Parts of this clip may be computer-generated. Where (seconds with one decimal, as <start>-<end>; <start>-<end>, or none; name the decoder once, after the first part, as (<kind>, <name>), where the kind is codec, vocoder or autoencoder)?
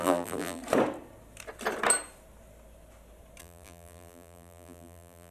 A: 0.0-0.6 (vocoder, BigVGAN v2); 3.4-5.3